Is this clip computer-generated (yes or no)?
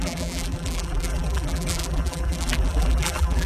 yes